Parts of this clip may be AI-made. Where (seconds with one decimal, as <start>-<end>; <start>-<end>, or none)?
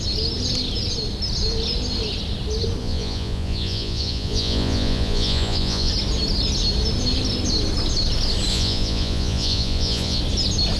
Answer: 2.8-5.9; 8.5-10.2